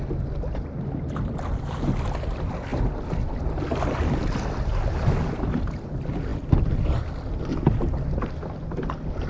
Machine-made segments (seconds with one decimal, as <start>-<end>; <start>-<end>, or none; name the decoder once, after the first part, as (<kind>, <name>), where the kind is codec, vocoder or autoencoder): none